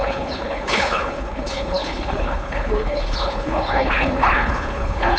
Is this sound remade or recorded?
remade